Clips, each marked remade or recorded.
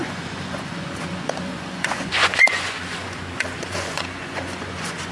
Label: remade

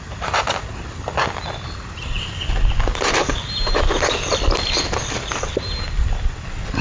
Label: recorded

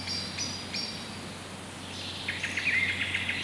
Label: recorded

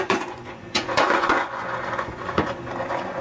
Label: remade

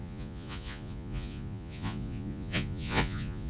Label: remade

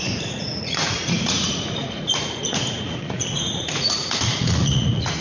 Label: remade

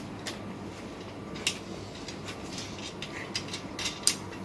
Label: recorded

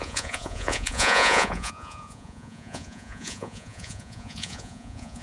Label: remade